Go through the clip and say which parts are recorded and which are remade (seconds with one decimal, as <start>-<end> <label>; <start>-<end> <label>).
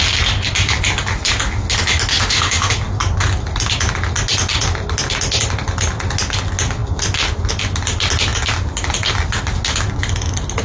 0.0-2.1 recorded; 2.1-2.7 remade; 2.7-10.6 recorded